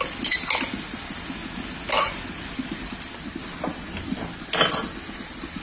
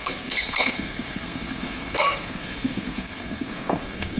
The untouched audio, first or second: first